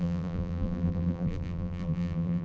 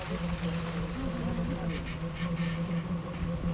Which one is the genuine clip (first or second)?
second